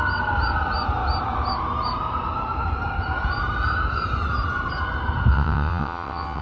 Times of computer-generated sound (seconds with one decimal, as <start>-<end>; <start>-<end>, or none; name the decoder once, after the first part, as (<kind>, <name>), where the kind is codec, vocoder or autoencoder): 5.3-6.4 (vocoder, WaveNeXt)